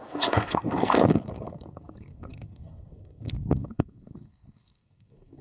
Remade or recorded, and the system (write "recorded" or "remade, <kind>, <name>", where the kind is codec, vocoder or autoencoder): remade, codec, SNAC